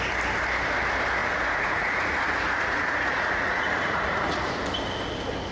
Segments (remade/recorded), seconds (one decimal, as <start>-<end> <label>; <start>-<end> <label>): 0.0-1.2 recorded; 1.2-4.5 remade; 4.5-5.5 recorded